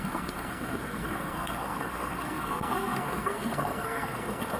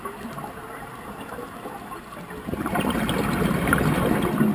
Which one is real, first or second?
second